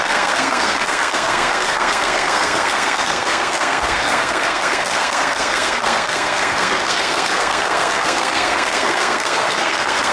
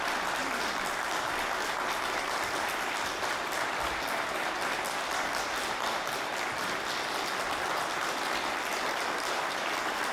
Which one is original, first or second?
second